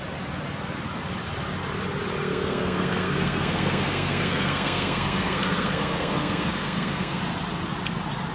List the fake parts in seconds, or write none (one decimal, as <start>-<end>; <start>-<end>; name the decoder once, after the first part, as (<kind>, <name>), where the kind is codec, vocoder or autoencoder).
2.2-7.2 (codec, SNAC)